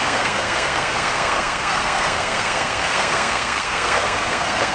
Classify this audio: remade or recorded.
remade